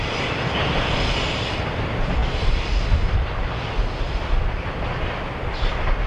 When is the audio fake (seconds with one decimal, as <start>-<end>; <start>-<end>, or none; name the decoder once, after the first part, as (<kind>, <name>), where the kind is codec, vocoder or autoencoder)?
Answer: none